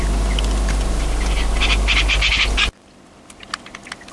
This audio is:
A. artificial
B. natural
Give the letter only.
B